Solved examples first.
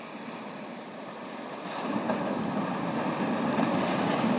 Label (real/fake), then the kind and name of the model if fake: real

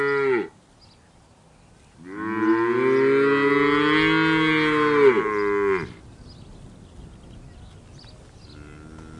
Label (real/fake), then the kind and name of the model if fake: real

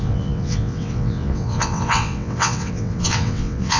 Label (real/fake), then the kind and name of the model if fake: fake, vocoder, WaveNeXt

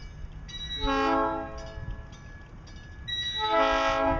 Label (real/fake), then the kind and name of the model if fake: real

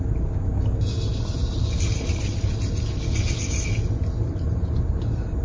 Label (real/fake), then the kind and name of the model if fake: real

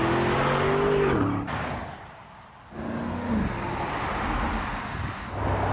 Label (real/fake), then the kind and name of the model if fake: real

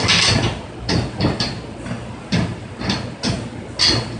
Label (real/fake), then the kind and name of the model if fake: real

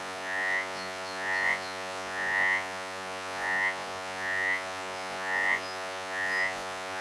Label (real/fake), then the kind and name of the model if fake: fake, vocoder, Vocos